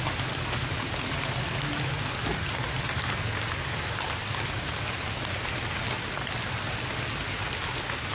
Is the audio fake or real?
real